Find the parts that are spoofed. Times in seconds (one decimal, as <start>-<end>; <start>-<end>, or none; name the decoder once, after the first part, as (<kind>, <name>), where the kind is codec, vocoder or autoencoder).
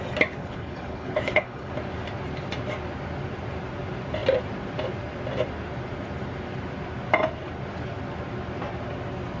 0.4-1.7 (codec, HILCodec)